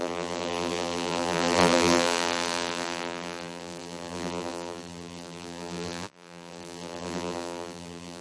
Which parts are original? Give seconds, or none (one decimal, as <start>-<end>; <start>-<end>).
none